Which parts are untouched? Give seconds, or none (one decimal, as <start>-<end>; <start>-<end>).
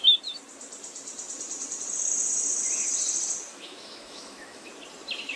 0.0-3.5; 4.7-5.4